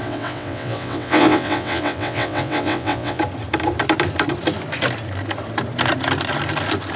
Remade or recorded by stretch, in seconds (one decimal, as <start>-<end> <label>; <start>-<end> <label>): 0.0-3.2 remade; 3.2-7.0 recorded